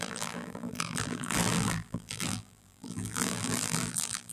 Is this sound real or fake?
fake